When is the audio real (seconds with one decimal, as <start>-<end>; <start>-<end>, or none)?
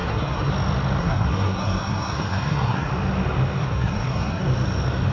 0.5-1.0; 2.9-3.6; 4.4-5.1